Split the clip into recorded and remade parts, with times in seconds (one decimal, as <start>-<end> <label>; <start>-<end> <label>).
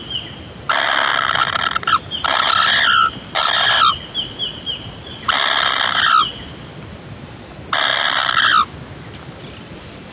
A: 0.0-10.1 recorded